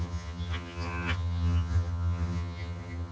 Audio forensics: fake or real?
fake